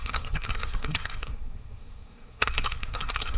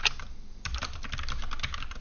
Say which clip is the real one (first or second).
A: second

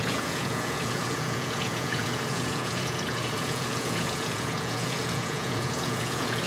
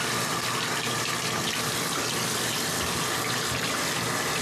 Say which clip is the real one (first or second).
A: second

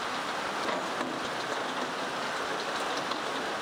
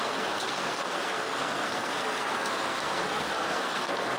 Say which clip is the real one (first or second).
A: first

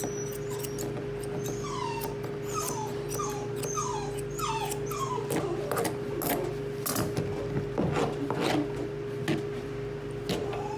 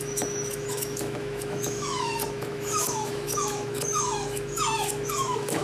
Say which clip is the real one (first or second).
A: first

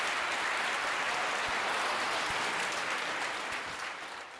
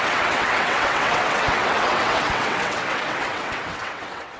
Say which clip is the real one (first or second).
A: first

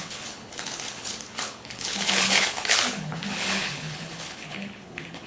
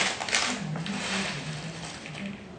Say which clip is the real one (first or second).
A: second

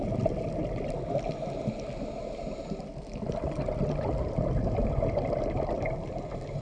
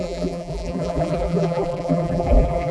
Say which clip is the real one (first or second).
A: first